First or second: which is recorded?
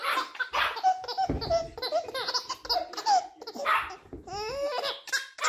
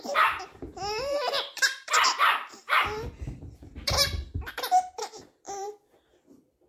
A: first